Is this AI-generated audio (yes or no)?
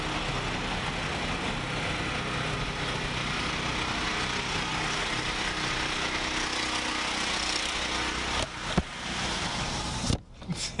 no